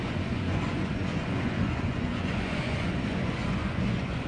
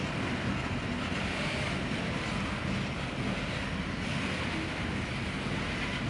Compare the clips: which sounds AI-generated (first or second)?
first